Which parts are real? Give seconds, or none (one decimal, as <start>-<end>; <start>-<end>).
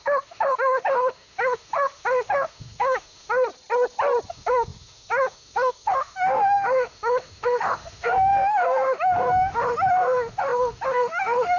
3.5-4.3